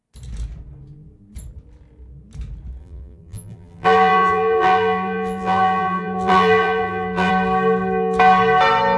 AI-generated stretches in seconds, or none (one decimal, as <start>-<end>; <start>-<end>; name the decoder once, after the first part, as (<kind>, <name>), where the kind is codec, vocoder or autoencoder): 2.8-7.3 (vocoder, BigVGAN v2)

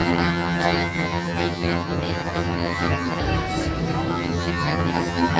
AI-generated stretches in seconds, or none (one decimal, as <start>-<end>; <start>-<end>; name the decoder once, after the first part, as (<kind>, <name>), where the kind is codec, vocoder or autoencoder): 0.0-3.2 (vocoder, HiFi-GAN); 4.1-5.4

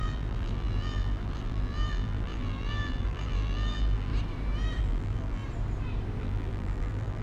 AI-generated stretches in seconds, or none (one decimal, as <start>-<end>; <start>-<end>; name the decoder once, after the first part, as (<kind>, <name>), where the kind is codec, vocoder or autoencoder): 0.0-4.1 (vocoder, BigVGAN v2); 4.8-5.4; 6.2-7.2

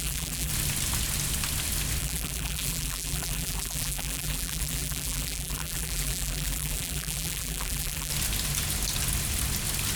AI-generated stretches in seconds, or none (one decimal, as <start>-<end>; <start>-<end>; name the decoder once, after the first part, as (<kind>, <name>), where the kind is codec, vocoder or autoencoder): 0.0-0.5 (vocoder, BigVGAN v2); 2.0-8.1

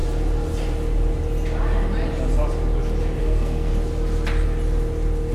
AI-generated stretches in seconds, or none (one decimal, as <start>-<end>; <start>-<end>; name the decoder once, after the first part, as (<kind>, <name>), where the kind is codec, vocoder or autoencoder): 3.2-3.7 (codec, SNAC)

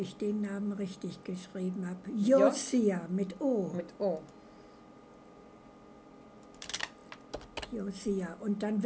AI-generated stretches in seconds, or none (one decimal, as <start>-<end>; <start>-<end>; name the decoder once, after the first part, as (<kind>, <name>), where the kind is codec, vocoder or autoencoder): none

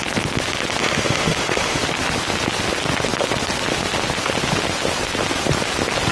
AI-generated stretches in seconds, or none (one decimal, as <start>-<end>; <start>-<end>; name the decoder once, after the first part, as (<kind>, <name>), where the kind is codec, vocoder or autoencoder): 0.8-1.8 (autoencoder, DAC-VAE)